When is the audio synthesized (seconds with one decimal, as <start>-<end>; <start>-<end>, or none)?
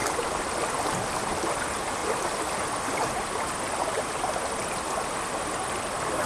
none